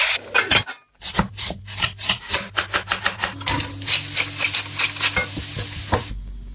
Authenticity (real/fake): real